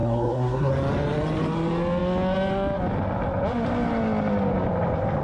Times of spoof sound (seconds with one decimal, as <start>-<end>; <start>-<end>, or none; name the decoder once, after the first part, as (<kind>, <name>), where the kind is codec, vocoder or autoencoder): 0.0-0.7 (codec, SNAC)